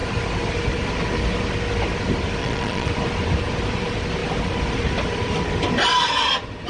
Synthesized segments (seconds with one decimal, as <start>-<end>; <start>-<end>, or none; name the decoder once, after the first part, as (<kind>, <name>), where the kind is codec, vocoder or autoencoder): 2.4-2.9 (vocoder, Vocos)